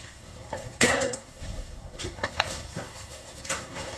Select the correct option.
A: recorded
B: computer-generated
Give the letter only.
B